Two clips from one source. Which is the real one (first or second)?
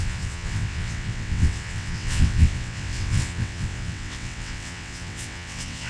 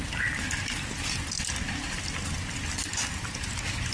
second